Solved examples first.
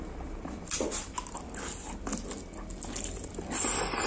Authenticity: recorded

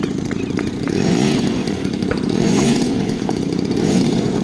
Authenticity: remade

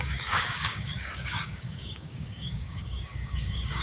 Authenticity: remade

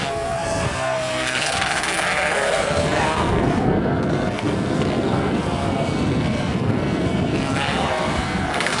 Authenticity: remade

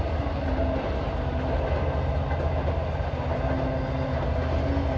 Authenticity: recorded